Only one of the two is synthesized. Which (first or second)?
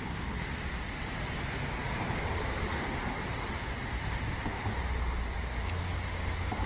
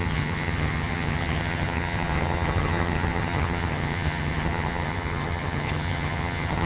second